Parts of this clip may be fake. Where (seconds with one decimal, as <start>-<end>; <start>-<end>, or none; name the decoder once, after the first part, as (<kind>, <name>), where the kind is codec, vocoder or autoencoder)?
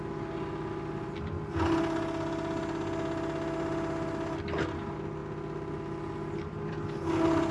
none